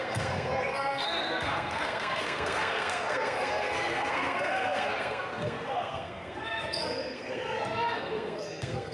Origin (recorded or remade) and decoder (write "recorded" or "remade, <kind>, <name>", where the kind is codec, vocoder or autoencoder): remade, codec, SNAC